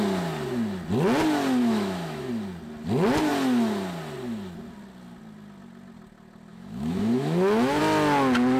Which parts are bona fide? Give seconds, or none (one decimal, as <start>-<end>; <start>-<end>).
0.0-1.6; 2.3-6.5; 7.8-8.6